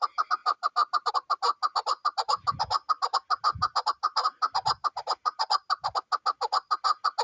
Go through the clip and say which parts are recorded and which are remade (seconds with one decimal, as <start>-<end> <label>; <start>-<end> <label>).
0.0-7.2 recorded